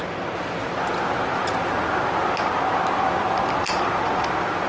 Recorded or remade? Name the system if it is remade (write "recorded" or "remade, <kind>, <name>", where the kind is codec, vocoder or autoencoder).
recorded